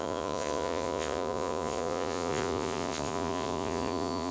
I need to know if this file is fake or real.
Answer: fake